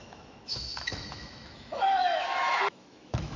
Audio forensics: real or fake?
fake